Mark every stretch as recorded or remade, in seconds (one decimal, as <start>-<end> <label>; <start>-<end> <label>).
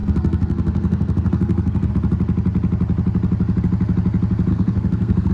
0.0-1.9 remade; 1.9-4.5 recorded; 4.5-5.3 remade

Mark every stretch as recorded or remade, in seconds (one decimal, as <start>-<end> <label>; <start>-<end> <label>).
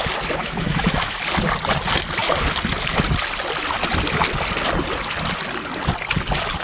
0.0-0.4 recorded; 0.4-1.2 remade; 1.2-6.6 recorded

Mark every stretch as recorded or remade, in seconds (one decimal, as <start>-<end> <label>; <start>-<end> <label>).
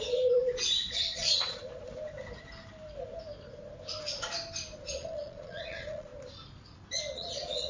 0.0-1.6 remade; 1.6-4.9 recorded; 4.9-6.1 remade; 6.1-7.0 recorded; 7.0-7.7 remade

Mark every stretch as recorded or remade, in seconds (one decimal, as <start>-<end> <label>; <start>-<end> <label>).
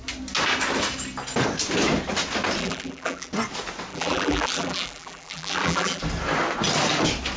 0.0-2.6 recorded; 2.6-3.3 remade; 3.3-3.9 recorded; 3.9-6.0 remade; 6.0-7.4 recorded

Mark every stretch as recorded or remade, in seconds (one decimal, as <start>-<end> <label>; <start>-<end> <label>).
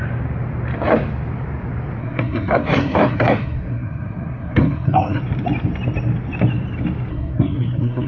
0.0-2.0 recorded; 2.0-5.2 remade; 5.2-7.1 recorded; 7.1-8.1 remade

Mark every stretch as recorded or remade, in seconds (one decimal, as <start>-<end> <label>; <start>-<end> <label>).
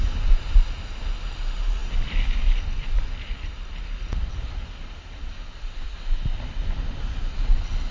0.0-7.9 recorded